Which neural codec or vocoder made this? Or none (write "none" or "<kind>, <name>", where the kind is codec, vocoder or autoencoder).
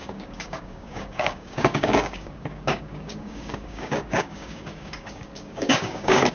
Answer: codec, DAC